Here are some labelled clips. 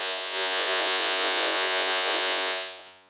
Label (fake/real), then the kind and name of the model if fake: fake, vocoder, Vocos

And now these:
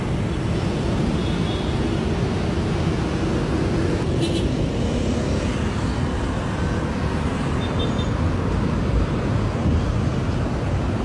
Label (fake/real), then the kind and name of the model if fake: real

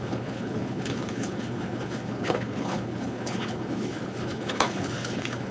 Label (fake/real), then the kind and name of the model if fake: fake, codec, HILCodec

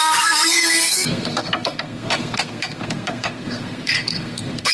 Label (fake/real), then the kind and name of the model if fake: fake, codec, SNAC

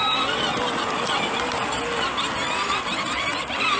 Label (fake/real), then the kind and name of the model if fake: real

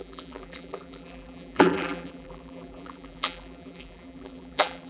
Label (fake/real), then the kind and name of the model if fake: fake, vocoder, BigVGAN v2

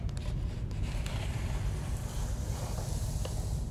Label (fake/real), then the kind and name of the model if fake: real